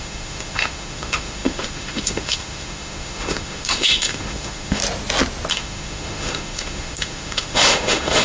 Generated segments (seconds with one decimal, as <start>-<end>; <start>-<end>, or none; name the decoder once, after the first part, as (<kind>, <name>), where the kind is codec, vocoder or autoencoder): 0.0-4.8 (autoencoder, DAC-VAE); 5.5-8.2